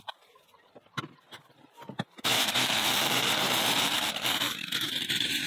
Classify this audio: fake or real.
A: fake